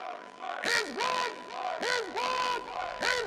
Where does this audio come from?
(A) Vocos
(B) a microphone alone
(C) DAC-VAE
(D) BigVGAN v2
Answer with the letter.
D